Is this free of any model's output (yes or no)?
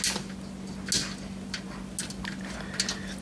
yes